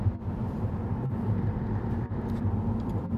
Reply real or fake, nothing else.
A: fake